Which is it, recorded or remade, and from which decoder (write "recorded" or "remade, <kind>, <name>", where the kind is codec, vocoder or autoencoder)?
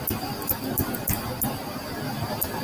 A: recorded